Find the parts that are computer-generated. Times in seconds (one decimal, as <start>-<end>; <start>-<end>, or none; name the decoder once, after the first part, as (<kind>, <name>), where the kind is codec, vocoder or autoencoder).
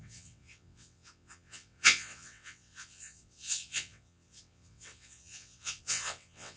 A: 0.0-6.6 (vocoder, WaveNeXt)